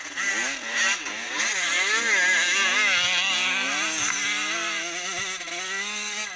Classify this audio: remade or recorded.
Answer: recorded